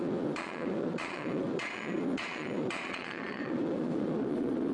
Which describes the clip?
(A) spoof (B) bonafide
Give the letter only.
A